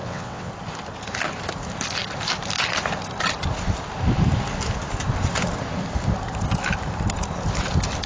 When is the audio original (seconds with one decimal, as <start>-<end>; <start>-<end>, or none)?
0.5-8.1